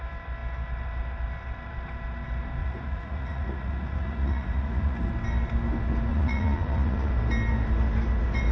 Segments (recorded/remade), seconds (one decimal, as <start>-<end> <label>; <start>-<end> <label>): 0.0-2.6 recorded; 2.6-5.1 remade; 5.1-6.1 recorded; 6.1-7.1 remade; 7.1-8.5 recorded